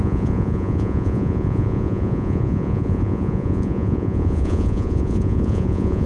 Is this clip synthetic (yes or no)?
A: yes